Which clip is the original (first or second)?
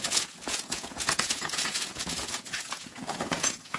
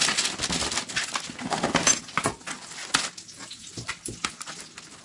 second